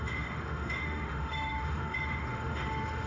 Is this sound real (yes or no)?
no